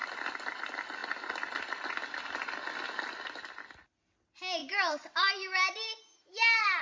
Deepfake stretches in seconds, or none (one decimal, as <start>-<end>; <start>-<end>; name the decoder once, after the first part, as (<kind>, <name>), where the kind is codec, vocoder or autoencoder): 4.6-6.8 (vocoder, BigVGAN v2)